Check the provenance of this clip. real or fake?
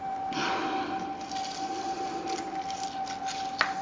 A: real